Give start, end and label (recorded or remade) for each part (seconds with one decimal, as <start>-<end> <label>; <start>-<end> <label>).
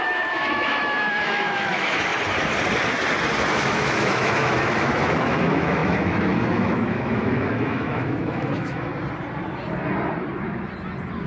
0.0-2.1 remade; 2.1-3.5 recorded; 3.5-8.9 remade; 8.9-11.3 recorded